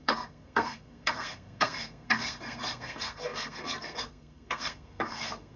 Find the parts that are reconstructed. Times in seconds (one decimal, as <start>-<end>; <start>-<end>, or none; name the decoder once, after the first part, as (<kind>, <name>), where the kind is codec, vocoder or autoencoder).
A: 0.0-5.6 (codec, SNAC)